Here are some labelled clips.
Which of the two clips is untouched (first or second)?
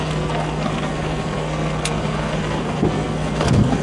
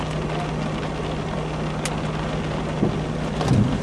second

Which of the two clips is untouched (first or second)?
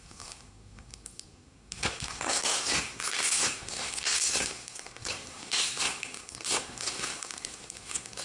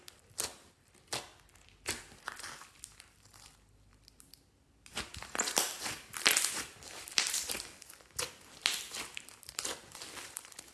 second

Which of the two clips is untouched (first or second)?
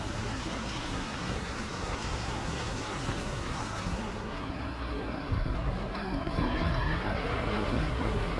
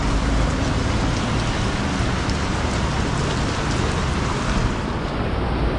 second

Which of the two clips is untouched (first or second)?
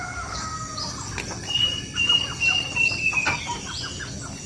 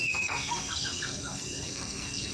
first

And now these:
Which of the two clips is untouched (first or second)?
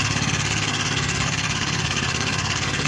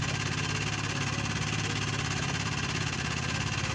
second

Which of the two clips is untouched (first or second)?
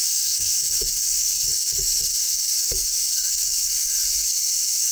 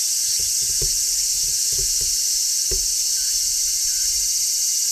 second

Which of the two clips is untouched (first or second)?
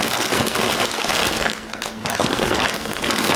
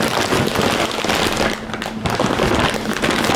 second